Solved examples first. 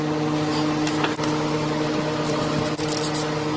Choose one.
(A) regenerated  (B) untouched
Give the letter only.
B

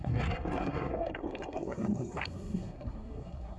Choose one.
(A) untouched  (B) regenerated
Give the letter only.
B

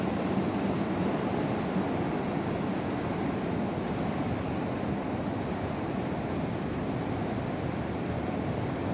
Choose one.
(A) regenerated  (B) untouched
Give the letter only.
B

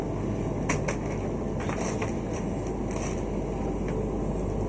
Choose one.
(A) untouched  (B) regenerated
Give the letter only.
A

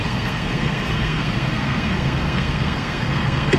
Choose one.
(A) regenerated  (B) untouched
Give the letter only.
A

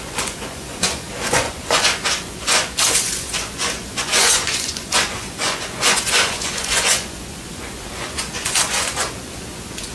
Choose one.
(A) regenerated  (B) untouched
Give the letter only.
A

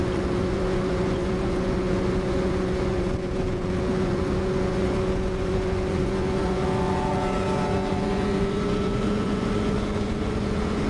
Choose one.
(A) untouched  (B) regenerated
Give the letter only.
B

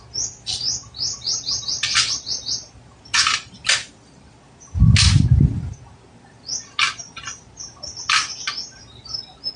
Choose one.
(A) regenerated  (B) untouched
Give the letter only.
B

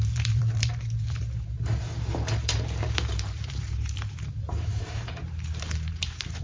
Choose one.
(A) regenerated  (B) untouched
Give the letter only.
A